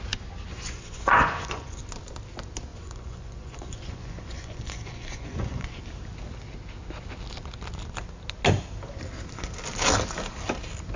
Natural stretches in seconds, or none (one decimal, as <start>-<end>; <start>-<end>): 0.0-0.5; 1.8-2.7; 5.8-11.0